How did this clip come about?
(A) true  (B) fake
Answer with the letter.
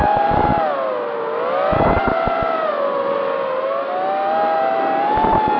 A